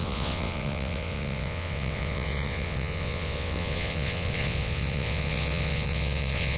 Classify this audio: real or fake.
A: fake